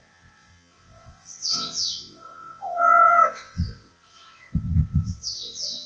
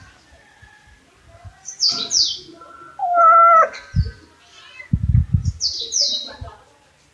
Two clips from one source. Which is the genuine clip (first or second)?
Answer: second